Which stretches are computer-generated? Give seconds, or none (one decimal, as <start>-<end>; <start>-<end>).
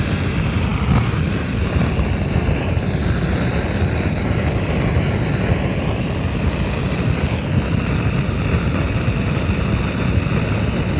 none